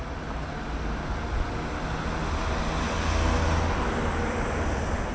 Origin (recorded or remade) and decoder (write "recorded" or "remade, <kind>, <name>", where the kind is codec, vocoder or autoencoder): recorded